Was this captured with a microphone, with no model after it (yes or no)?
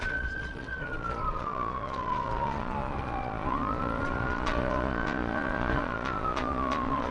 no